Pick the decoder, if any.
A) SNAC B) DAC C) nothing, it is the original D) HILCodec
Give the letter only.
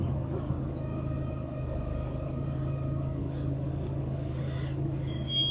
B